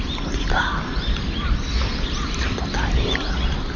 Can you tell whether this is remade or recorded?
recorded